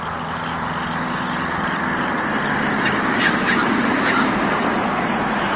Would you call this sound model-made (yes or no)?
no